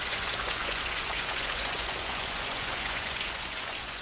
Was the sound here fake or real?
fake